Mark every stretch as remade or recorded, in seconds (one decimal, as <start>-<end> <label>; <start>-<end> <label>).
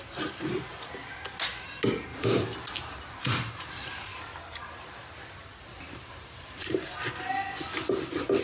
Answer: 0.0-2.1 recorded; 2.1-4.2 remade; 4.2-5.7 recorded; 5.7-7.0 remade; 7.0-8.4 recorded